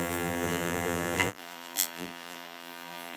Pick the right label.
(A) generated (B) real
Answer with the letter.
A